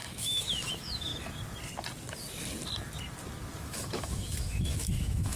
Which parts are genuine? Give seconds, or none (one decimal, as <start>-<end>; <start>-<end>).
1.1-3.6

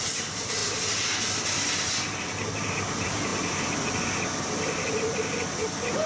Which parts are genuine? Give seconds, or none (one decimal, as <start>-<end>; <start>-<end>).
0.0-6.1

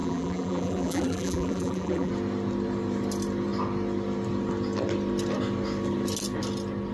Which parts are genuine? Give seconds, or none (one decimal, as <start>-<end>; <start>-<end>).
2.1-6.9

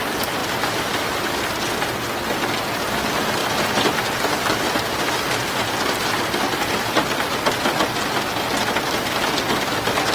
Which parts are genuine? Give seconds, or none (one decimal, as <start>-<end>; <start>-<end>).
0.0-0.4; 1.5-10.1

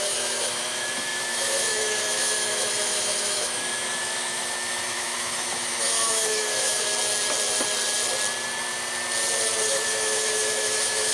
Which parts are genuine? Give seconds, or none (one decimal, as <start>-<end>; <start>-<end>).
6.9-9.7

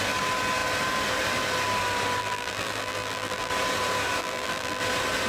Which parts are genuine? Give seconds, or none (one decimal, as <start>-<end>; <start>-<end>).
0.0-2.2; 3.5-4.2; 4.8-5.3